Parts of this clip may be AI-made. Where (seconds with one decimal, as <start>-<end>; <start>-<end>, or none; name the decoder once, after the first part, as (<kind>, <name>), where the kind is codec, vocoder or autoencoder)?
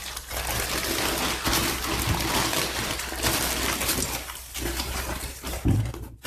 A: 3.8-6.3 (vocoder, BigVGAN v2)